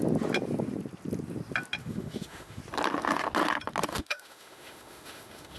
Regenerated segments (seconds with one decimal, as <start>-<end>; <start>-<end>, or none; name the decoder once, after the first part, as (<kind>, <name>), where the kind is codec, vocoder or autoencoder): 1.8-2.6 (autoencoder, DAC-VAE); 3.9-5.6